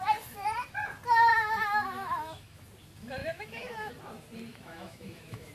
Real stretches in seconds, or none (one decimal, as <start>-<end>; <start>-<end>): 0.0-1.3; 2.6-3.2; 3.9-4.5